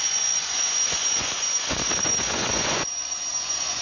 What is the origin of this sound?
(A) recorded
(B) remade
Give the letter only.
B